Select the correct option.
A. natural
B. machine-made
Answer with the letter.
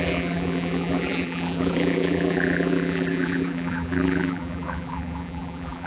B